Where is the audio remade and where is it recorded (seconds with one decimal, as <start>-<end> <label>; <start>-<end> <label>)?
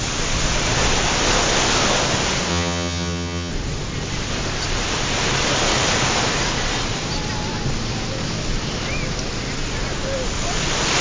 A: 0.0-2.5 recorded; 2.5-3.5 remade; 3.5-11.0 recorded